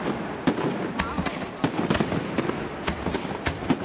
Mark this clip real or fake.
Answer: real